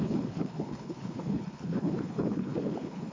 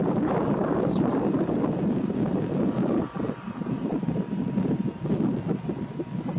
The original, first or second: second